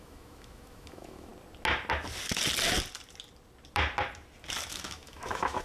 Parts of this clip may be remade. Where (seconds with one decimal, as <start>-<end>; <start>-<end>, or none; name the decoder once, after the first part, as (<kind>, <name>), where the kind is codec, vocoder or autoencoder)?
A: 0.0-1.3 (autoencoder, DAC-VAE); 4.7-5.6